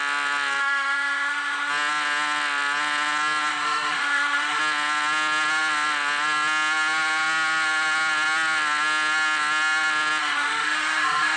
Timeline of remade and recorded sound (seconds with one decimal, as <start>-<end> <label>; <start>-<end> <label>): 0.0-0.6 recorded; 0.6-1.7 remade; 1.7-3.5 recorded; 3.5-4.6 remade; 4.6-10.2 recorded; 10.2-11.4 remade